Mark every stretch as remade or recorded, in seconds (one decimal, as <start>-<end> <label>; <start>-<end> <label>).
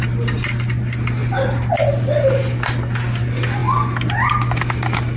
0.0-5.2 recorded